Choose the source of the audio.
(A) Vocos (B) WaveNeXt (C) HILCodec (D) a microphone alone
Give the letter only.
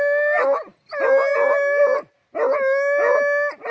D